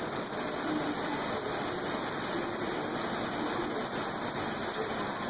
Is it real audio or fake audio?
real